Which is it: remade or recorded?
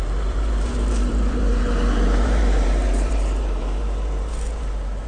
remade